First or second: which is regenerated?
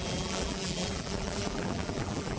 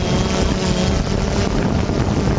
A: first